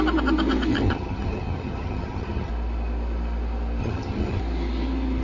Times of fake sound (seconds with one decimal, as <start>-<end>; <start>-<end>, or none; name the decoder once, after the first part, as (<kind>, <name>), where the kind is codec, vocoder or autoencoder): 0.7-2.5 (vocoder, HiFi-GAN); 3.8-4.4